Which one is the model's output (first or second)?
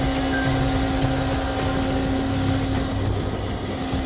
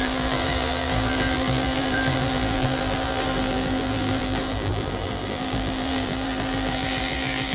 second